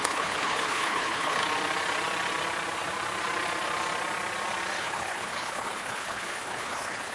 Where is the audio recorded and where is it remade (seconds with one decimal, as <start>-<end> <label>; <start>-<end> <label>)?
0.0-1.4 remade; 1.4-4.8 recorded; 4.8-7.1 remade